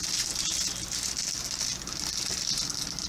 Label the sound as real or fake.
real